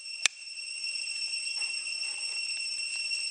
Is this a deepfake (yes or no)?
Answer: yes